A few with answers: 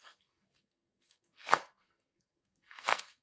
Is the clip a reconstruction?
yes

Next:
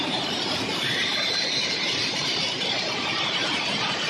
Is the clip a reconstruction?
yes